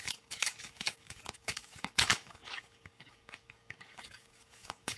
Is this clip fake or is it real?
fake